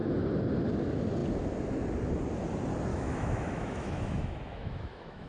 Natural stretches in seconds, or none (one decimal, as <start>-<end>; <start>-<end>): 0.0-2.9